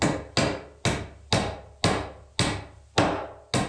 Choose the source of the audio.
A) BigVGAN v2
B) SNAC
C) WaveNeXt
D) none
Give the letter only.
D